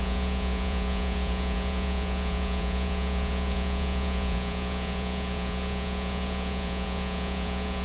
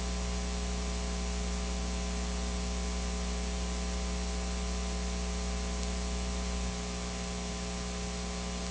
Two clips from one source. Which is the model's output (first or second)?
first